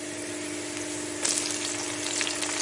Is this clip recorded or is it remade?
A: recorded